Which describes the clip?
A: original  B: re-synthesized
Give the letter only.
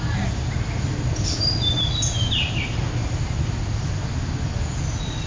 A